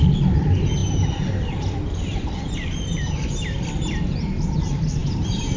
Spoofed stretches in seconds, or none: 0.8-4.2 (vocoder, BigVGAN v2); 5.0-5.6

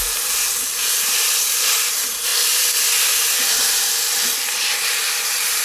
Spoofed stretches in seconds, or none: 0.0-2.3 (vocoder, BigVGAN v2); 4.8-5.6

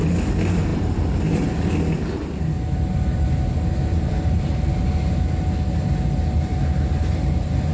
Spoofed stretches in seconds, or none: 0.7-1.7 (vocoder, BigVGAN v2); 3.9-4.7

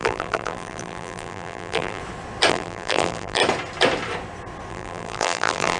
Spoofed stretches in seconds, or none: 0.0-2.0 (vocoder, BigVGAN v2); 2.5-3.4; 4.7-5.8

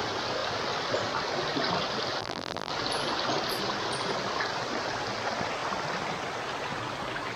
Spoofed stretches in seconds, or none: 2.2-2.7 (vocoder, BigVGAN v2)

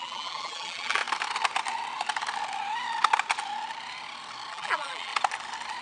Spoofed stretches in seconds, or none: 0.0-1.0 (vocoder, BigVGAN v2); 4.5-5.1

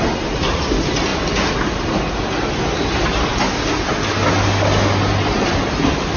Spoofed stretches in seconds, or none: none

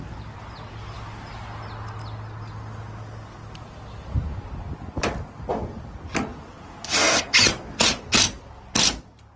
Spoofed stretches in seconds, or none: 6.3-6.8 (vocoder, BigVGAN v2)